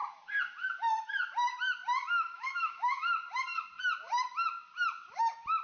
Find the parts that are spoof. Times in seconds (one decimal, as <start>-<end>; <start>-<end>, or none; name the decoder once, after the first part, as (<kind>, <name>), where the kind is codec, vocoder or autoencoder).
2.1-3.0 (autoencoder, DAC-VAE)